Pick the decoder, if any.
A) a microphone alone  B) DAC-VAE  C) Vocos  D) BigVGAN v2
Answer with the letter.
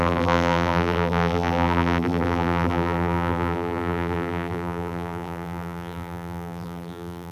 D